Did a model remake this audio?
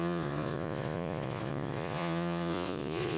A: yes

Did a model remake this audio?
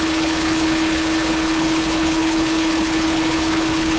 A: yes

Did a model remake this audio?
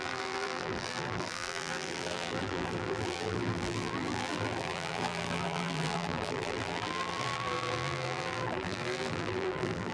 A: yes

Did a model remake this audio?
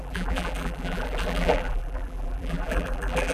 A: yes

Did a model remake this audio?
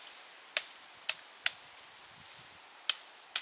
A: no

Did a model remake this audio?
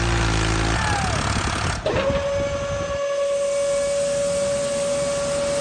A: no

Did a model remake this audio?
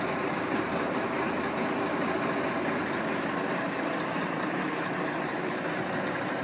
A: no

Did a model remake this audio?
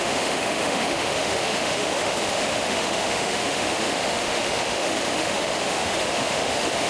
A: yes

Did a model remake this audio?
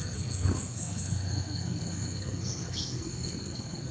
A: yes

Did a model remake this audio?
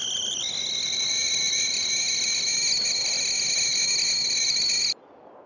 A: no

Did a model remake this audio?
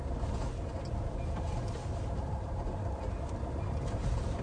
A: yes